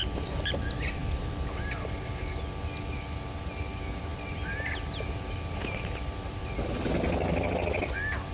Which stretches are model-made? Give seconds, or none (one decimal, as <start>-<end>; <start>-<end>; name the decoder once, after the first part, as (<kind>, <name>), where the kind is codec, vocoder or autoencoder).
1.0-1.6 (vocoder, BigVGAN v2)